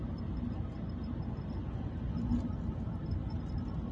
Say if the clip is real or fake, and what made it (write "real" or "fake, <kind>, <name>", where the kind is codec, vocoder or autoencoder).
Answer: real